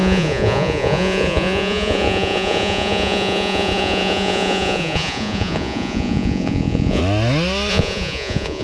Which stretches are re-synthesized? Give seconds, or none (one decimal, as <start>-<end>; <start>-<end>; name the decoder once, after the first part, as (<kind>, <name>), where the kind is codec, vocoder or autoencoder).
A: 0.0-7.0 (vocoder, Vocos); 7.7-8.6